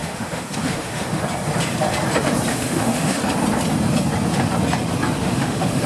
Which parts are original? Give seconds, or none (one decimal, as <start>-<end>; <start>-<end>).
1.2-2.5; 3.2-5.2